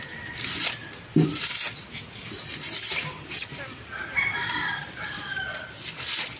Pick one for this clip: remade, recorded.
recorded